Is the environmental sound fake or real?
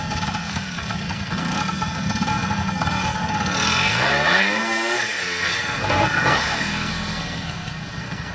fake